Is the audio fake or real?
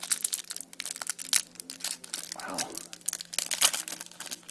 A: real